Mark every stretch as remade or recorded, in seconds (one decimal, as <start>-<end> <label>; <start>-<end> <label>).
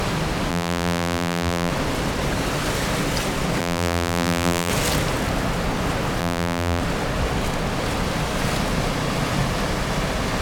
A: 0.0-0.5 recorded; 0.5-1.7 remade; 1.7-3.6 recorded; 3.6-4.7 remade; 4.7-6.2 recorded; 6.2-6.8 remade; 6.8-10.4 recorded